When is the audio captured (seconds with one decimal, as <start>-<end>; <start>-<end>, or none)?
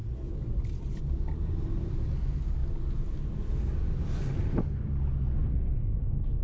0.0-5.8